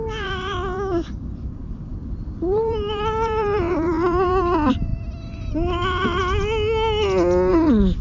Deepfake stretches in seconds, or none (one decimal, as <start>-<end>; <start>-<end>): 0.0-4.9; 5.5-6.2; 7.5-8.0